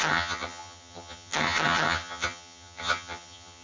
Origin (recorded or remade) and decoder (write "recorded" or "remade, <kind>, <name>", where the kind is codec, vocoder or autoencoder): remade, vocoder, HiFi-GAN